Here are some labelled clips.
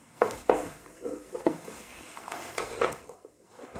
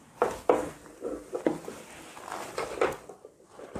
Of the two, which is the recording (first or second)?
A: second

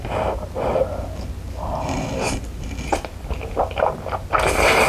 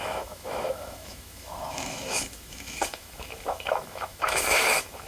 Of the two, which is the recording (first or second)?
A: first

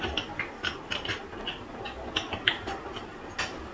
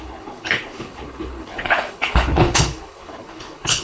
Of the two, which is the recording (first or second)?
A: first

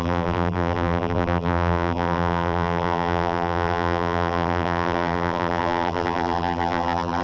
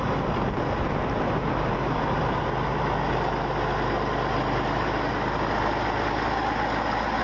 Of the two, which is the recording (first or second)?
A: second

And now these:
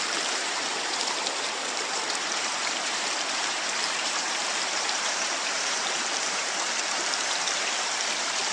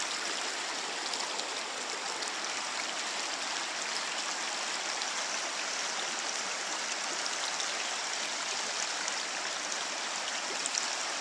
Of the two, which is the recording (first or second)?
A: second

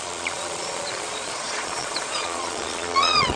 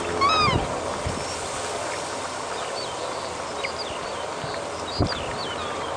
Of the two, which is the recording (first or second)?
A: second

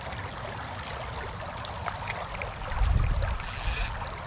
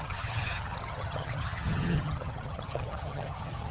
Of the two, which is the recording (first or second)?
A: first